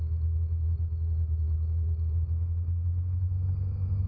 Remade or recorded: remade